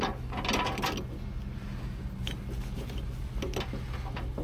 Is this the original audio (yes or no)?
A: yes